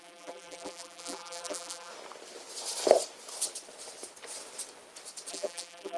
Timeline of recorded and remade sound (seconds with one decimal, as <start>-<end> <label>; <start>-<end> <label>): 0.0-1.9 remade; 1.9-5.3 recorded; 5.3-6.0 remade

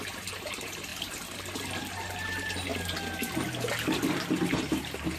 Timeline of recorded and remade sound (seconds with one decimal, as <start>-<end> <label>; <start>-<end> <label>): 0.0-0.9 remade; 0.9-1.8 recorded; 1.8-2.7 remade; 2.7-4.5 recorded; 4.5-5.2 remade